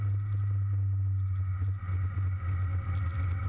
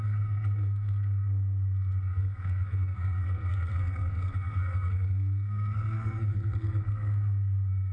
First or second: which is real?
first